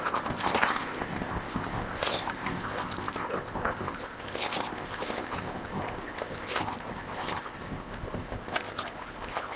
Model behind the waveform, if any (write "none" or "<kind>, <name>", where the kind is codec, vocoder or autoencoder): codec, ZipCodec